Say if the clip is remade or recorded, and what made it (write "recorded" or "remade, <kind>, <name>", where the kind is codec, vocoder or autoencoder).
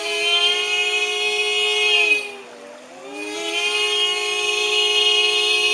recorded